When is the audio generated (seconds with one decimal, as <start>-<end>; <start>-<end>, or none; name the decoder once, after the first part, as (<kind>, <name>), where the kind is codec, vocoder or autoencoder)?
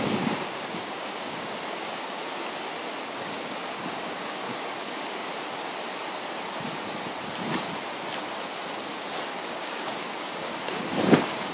0.0-2.2 (codec, DAC); 3.1-5.2; 9.5-11.5